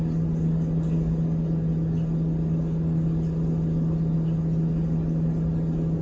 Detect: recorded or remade recorded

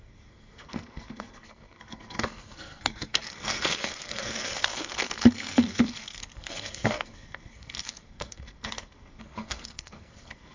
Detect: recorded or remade remade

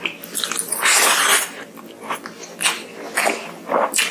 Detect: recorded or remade recorded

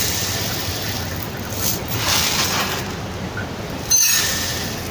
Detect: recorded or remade recorded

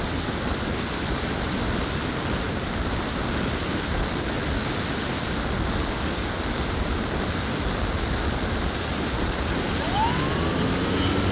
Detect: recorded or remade recorded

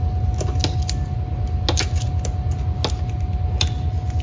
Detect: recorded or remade recorded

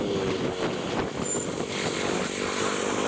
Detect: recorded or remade recorded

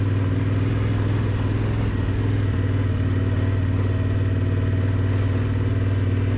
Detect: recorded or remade recorded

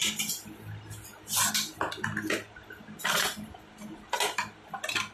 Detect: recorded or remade recorded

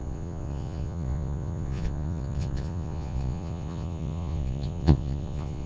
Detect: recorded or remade remade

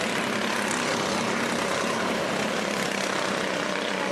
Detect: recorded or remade recorded